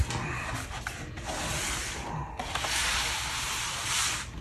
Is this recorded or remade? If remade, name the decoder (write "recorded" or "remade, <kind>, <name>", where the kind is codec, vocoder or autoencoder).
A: recorded